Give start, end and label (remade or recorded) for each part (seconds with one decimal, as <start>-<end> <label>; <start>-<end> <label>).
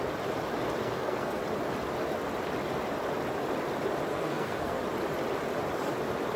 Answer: 0.0-0.8 recorded; 0.8-1.4 remade; 1.4-4.1 recorded; 4.1-4.8 remade; 4.8-6.4 recorded